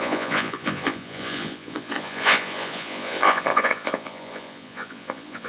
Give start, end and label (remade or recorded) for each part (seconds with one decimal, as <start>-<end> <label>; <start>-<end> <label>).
0.0-5.5 remade